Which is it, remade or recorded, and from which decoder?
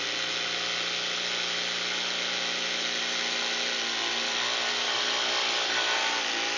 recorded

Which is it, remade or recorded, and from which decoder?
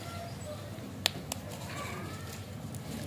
recorded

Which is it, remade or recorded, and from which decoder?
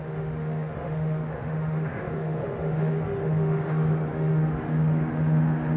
remade, autoencoder, DAC-VAE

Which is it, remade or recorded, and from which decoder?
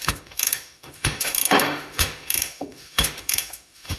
remade, autoencoder, DAC-VAE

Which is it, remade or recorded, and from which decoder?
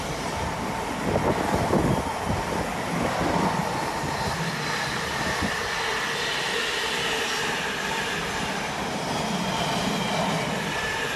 recorded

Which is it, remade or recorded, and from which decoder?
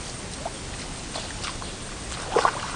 recorded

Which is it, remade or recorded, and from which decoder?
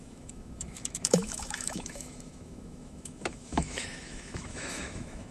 remade, autoencoder, DAC-VAE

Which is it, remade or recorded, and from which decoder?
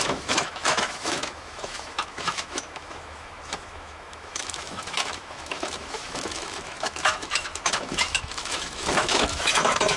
remade, autoencoder, DAC-VAE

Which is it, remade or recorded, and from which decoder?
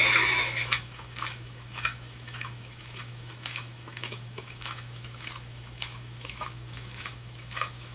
remade, autoencoder, DAC-VAE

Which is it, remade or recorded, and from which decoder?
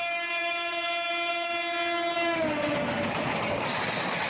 recorded